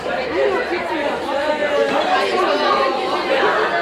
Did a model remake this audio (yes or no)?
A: no